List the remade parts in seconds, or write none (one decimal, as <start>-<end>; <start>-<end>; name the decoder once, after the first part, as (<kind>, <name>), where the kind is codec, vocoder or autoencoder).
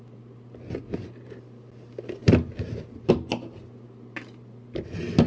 2.2-3.1 (vocoder, BigVGAN v2)